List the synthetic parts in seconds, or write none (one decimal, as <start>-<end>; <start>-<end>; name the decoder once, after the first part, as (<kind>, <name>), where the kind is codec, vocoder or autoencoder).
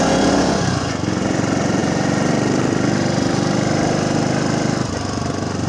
0.0-1.0 (vocoder, Vocos)